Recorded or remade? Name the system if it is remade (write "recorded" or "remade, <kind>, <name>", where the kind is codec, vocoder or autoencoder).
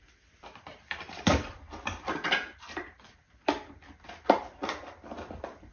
remade, vocoder, BigVGAN v2